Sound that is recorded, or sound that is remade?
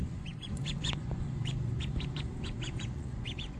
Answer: remade